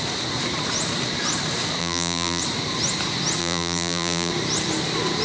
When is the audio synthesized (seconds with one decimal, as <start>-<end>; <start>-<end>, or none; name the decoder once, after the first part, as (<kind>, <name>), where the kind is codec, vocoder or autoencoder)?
1.8-2.4 (vocoder, BigVGAN v2); 3.4-4.3